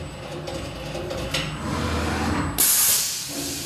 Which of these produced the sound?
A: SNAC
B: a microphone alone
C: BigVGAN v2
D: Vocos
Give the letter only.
B